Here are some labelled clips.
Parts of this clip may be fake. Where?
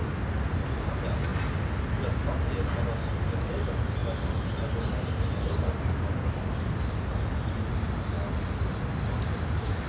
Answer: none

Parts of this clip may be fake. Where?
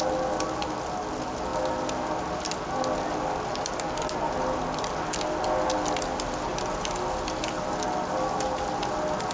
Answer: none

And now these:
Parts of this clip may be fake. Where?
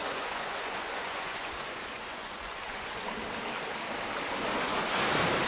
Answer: 0.0-3.2 (vocoder, Vocos); 4.5-5.0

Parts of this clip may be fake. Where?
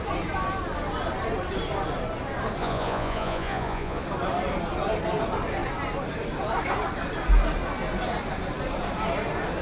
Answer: 2.6-4.0 (vocoder, Vocos)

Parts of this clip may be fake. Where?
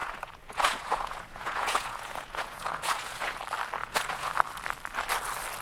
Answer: 0.0-3.4 (vocoder, Vocos); 3.8-4.3